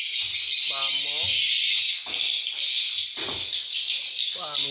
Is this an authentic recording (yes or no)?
yes